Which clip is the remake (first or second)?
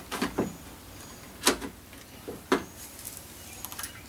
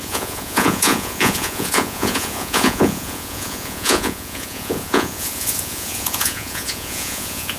second